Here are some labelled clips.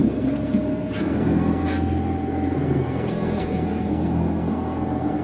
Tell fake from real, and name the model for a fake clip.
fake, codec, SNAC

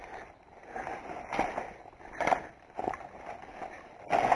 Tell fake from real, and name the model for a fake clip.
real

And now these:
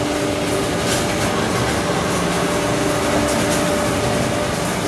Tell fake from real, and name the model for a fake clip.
real